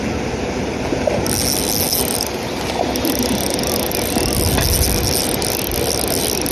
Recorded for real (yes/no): yes